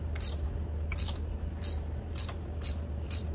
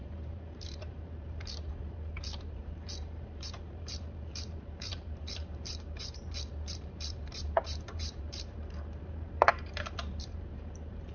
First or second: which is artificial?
second